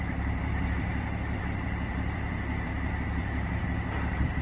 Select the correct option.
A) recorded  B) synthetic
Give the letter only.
B